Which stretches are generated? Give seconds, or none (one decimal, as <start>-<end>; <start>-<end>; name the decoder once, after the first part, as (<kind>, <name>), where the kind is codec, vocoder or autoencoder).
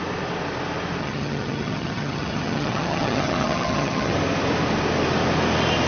1.0-4.1 (vocoder, HiFi-GAN)